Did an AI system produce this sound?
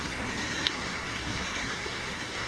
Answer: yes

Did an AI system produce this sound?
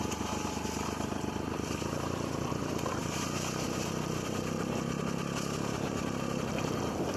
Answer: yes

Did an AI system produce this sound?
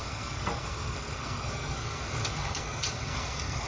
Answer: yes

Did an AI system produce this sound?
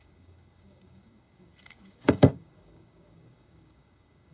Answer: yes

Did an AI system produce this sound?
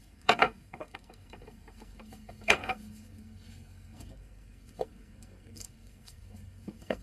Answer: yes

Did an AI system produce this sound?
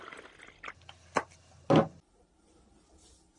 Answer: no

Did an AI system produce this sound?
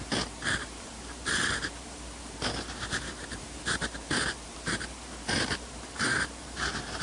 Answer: yes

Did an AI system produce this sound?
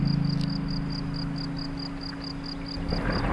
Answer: no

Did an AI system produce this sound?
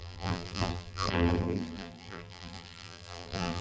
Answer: yes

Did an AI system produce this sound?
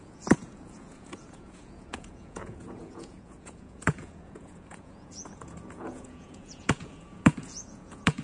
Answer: yes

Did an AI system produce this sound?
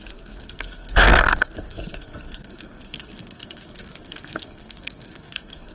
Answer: yes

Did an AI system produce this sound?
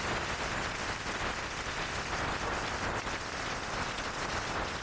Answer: yes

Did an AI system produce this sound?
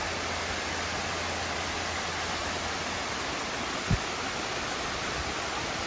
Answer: no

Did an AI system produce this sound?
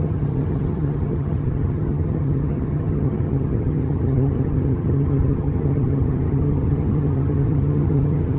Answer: yes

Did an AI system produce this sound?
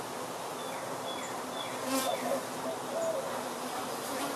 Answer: no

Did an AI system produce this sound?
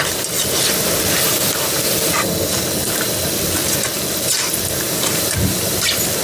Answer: no